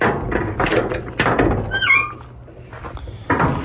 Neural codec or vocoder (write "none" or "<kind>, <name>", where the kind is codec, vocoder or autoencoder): none